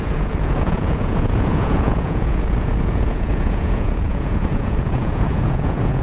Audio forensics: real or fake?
fake